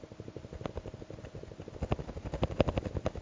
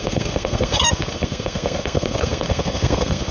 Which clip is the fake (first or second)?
second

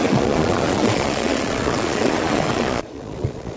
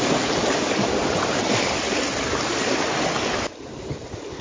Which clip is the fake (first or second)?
first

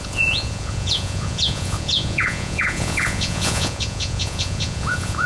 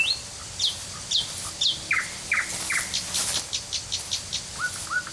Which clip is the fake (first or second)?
first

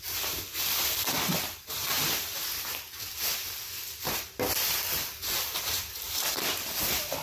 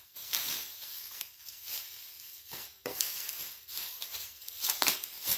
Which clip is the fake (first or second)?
second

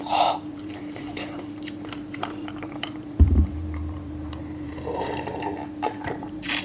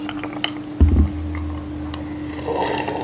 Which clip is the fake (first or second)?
first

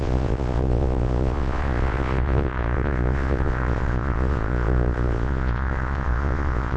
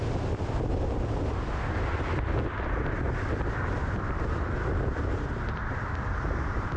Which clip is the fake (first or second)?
first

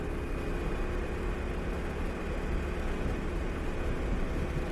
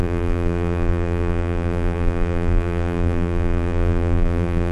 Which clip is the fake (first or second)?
second